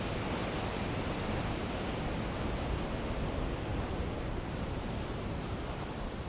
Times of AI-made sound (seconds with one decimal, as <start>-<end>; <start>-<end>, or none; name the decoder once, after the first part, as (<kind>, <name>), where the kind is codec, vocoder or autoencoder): 0.7-1.6 (vocoder, BigVGAN v2); 3.7-5.8